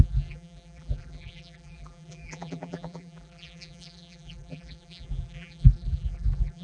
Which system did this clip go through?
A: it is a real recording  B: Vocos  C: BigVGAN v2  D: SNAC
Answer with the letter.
C